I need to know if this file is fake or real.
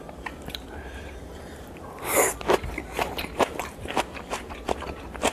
fake